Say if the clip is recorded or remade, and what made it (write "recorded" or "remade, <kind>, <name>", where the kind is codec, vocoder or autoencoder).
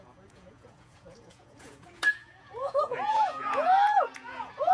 remade, vocoder, Vocos